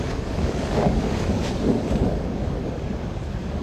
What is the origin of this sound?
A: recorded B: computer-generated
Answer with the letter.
B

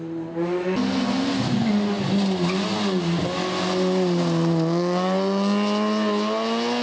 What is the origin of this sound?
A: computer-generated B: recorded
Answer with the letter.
B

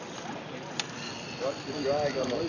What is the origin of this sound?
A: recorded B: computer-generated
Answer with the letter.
A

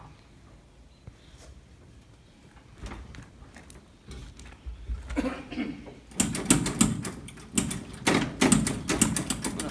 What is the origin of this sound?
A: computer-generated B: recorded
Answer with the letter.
B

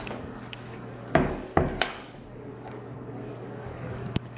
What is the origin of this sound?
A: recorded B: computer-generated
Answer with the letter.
B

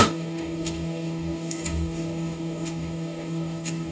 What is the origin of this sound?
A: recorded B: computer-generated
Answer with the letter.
B